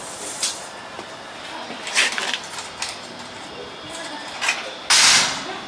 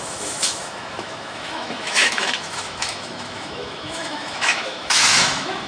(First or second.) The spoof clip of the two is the second